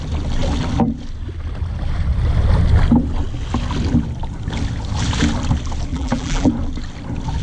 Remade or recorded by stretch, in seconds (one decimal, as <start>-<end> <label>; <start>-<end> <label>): 0.0-5.9 recorded; 5.9-6.5 remade; 6.5-7.4 recorded